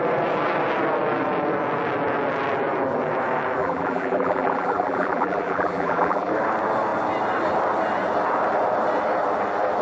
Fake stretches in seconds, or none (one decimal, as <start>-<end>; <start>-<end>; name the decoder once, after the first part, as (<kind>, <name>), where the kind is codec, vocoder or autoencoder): 3.6-6.3 (vocoder, BigVGAN v2)

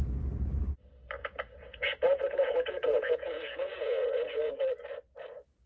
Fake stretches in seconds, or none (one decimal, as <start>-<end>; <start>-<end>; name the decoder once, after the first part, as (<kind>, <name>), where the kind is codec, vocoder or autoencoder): 1.2-4.6 (vocoder, Vocos)

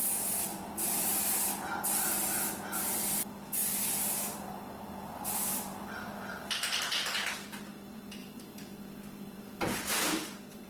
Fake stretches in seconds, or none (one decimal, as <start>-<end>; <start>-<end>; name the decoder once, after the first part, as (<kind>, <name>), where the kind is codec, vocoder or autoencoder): 0.5-1.3 (vocoder, BigVGAN v2); 3.6-6.8; 8.2-10.7

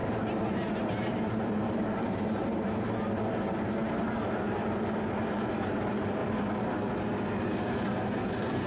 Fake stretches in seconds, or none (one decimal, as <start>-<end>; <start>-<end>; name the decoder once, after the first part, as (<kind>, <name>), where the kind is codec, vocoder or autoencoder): 0.0-3.8 (vocoder, BigVGAN v2); 5.7-6.2; 7.2-8.7

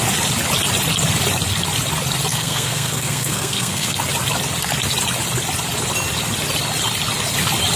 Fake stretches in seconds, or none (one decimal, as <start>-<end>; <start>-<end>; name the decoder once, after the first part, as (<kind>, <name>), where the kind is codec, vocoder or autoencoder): 2.3-4.0 (codec, SNAC)